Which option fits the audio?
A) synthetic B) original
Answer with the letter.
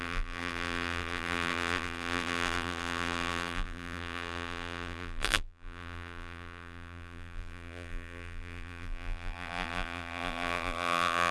A